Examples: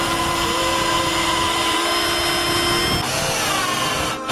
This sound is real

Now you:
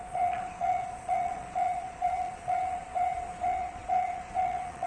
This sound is fake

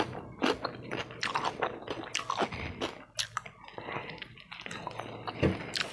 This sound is real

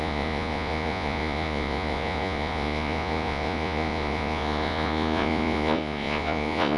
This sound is fake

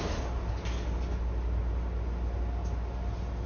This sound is real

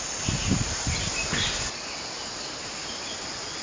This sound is real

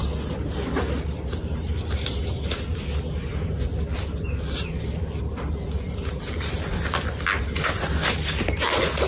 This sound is real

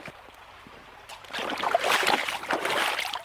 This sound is real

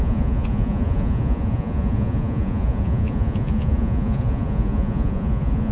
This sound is fake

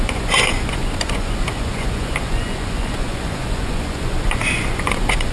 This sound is fake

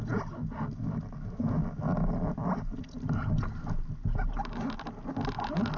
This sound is real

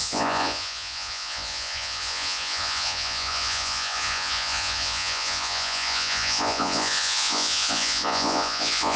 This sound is fake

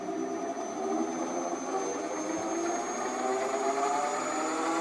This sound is real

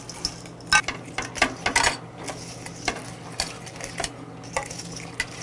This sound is real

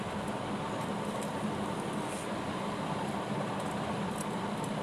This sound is real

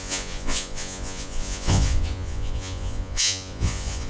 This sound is fake